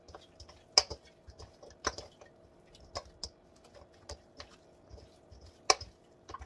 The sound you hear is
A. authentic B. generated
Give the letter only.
A